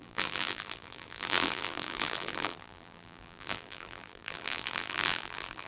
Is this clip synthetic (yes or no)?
yes